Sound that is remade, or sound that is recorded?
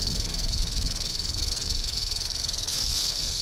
remade